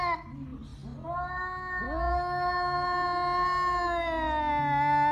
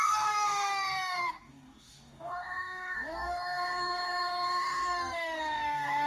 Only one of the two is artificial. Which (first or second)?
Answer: second